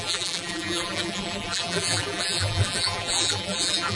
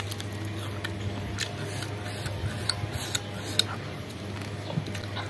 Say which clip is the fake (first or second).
first